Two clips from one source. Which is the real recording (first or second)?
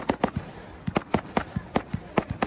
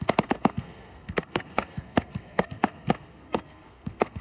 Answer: first